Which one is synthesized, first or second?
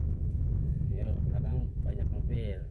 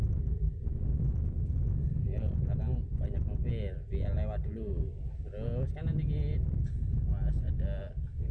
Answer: first